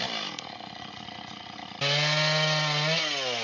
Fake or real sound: real